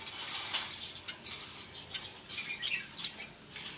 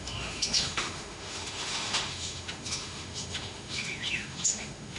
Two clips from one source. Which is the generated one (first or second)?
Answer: second